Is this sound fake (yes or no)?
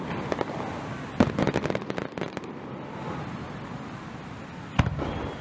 no